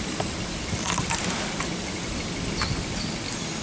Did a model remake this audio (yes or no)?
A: no